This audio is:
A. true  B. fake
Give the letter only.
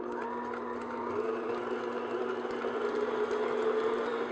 A